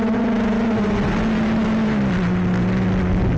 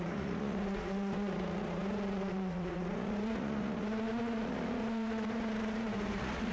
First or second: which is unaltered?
first